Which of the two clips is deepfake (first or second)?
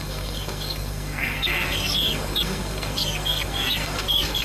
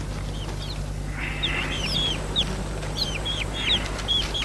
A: first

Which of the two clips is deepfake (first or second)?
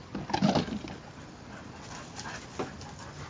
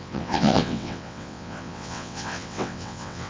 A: second